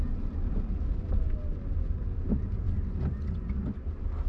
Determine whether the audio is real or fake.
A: real